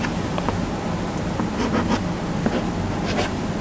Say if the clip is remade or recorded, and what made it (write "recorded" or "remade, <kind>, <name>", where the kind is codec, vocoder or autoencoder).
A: recorded